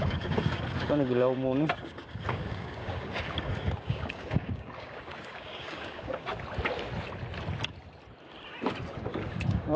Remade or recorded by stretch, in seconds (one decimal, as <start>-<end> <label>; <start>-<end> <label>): 0.0-6.3 remade; 6.3-8.8 recorded; 8.8-9.8 remade